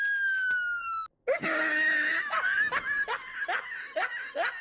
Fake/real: real